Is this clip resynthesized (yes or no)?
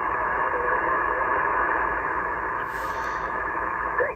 yes